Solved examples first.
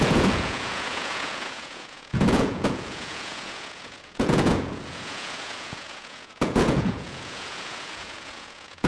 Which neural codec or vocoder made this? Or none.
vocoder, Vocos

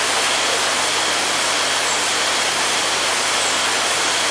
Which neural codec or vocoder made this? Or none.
none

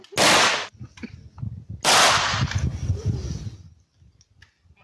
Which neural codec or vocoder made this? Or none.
none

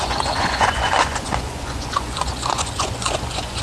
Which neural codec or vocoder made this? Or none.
vocoder, Vocos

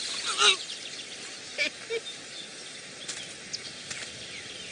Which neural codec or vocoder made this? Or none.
none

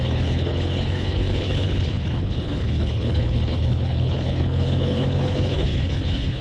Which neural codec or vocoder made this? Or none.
codec, HILCodec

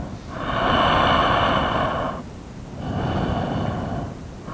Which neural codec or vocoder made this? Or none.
none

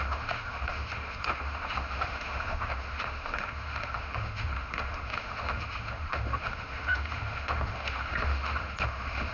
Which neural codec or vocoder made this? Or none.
autoencoder, DAC-VAE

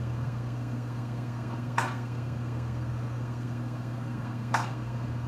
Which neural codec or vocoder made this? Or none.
codec, SNAC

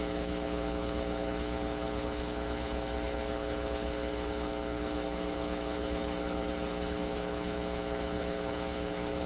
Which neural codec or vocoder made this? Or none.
codec, HILCodec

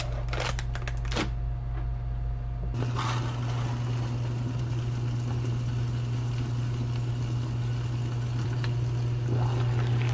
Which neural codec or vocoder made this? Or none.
none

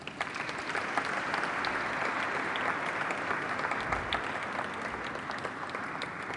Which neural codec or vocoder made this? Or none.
none